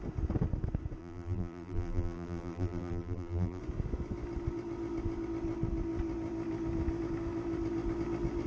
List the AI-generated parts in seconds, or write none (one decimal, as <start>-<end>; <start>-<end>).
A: 1.0-3.6